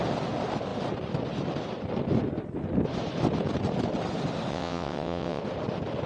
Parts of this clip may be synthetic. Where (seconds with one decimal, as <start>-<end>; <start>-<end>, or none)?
4.5-5.4